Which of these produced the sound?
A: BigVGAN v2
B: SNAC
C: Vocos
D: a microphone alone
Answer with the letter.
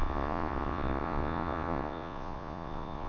C